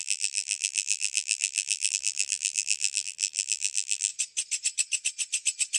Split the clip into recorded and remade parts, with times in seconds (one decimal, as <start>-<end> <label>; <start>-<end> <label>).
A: 0.0-4.1 remade; 4.1-5.8 recorded